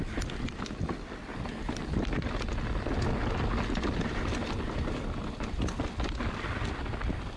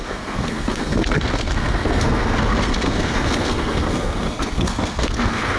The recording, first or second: first